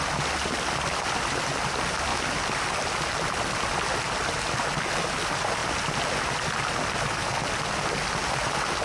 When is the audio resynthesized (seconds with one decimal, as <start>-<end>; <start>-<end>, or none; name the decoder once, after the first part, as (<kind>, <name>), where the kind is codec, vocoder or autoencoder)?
none